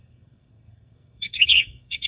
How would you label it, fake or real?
fake